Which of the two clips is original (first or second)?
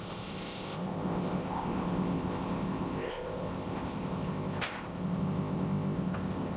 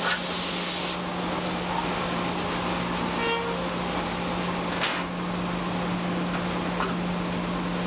second